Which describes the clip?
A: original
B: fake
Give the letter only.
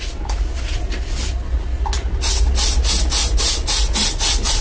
A